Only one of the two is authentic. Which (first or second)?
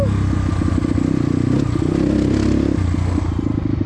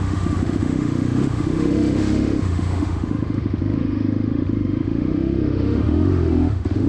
first